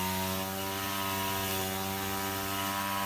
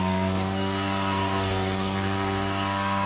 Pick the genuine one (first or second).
first